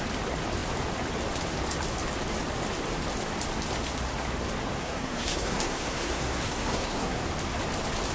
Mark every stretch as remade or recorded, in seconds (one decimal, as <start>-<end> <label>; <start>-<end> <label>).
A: 0.0-4.8 recorded; 4.8-7.2 remade; 7.2-8.1 recorded